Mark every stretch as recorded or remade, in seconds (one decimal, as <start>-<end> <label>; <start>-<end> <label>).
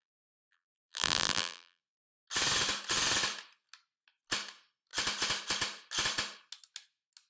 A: 0.0-1.8 remade; 1.8-7.3 recorded